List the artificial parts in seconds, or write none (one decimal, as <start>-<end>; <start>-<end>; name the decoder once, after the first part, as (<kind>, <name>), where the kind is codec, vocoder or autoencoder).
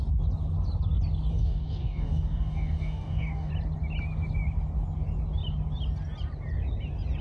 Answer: 1.3-3.5 (codec, DAC)